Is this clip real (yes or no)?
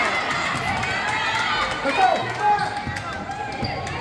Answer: yes